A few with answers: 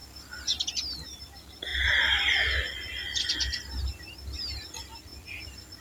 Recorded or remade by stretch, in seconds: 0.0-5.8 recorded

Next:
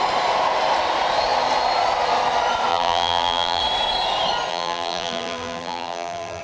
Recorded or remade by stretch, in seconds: 0.0-2.7 recorded; 2.7-3.6 remade; 3.6-4.5 recorded; 4.5-6.4 remade

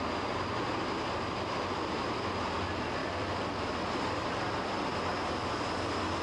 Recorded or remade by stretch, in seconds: 0.0-3.0 recorded; 3.0-3.7 remade; 3.7-4.2 recorded; 4.2-5.1 remade; 5.1-6.2 recorded

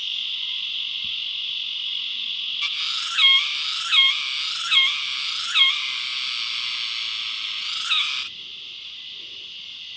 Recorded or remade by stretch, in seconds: 0.0-10.0 recorded

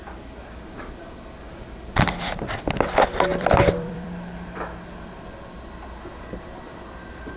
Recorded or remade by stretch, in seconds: 0.0-3.3 recorded; 3.3-5.3 remade; 5.3-7.4 recorded